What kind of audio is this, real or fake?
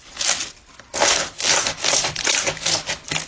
real